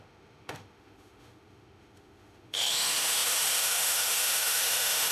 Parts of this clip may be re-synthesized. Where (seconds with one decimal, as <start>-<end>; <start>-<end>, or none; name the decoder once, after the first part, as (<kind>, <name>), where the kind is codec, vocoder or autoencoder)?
0.0-5.1 (autoencoder, DAC-VAE)